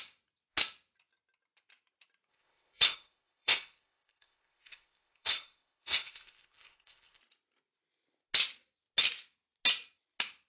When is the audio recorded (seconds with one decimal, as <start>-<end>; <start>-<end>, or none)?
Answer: 0.0-2.3; 7.2-10.5